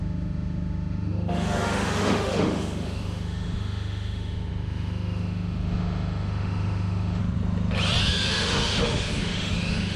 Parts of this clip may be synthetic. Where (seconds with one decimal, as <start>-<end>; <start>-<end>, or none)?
0.0-7.2; 8.0-10.0